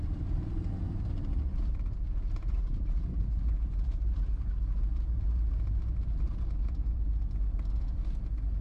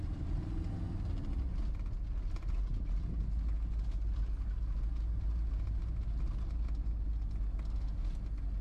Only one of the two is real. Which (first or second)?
second